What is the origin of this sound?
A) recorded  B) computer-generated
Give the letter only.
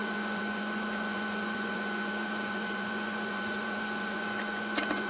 B